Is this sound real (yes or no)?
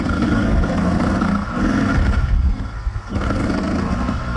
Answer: no